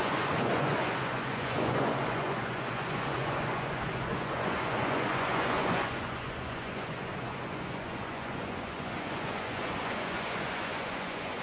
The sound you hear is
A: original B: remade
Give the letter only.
B